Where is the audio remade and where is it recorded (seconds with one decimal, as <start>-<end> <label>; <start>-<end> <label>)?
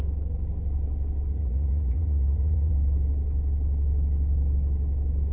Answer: 0.0-1.3 recorded; 1.3-2.7 remade; 2.7-5.3 recorded